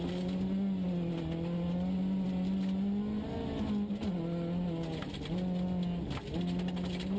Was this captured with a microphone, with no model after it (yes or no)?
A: yes